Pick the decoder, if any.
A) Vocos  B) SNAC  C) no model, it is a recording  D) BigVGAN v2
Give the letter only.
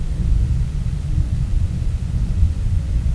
A